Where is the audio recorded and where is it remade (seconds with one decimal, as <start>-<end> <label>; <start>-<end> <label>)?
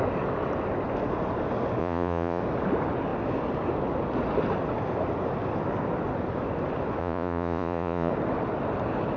0.0-1.8 recorded; 1.8-2.4 remade; 2.4-7.0 recorded; 7.0-8.1 remade; 8.1-9.2 recorded